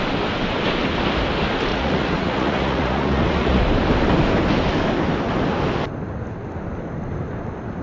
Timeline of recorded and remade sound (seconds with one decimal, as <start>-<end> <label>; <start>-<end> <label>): 0.0-1.7 recorded; 1.7-3.6 remade; 3.6-7.8 recorded